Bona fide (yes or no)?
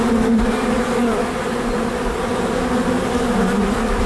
yes